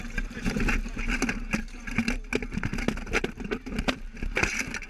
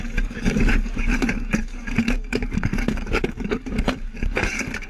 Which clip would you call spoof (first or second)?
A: second